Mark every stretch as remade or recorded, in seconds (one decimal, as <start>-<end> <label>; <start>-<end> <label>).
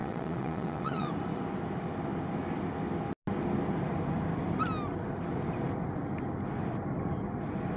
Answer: 0.0-1.1 remade; 1.1-7.8 recorded